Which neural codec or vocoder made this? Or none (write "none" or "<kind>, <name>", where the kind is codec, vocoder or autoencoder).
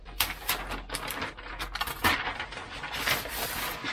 none